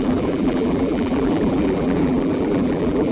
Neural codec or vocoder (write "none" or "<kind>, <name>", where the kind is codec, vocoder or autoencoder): vocoder, BigVGAN v2